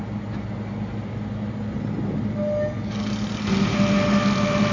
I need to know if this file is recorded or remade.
recorded